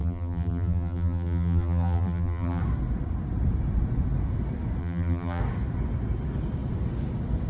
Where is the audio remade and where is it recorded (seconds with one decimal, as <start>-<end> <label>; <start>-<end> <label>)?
0.0-2.6 remade; 2.6-4.8 recorded; 4.8-5.4 remade; 5.4-7.5 recorded